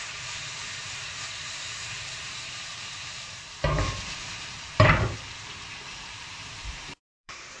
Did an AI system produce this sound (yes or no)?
yes